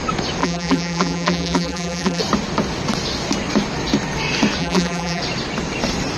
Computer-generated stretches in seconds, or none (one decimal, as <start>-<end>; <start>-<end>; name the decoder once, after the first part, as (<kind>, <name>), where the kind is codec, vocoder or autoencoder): 0.4-2.2 (vocoder, BigVGAN v2); 4.6-5.2